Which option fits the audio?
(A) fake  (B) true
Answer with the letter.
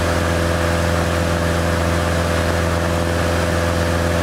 B